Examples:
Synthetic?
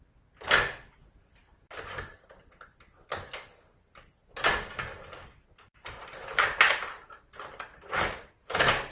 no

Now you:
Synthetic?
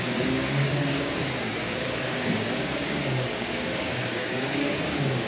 yes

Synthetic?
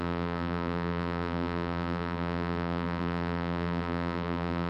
yes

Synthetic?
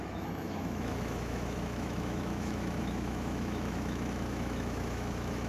yes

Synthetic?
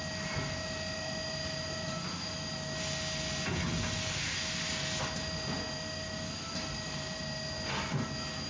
no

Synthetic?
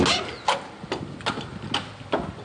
no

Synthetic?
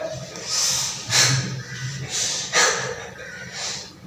no